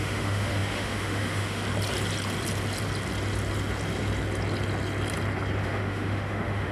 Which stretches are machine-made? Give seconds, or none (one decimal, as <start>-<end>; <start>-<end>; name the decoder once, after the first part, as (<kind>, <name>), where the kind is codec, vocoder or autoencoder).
0.0-1.6 (autoencoder, DAC-VAE); 5.6-6.7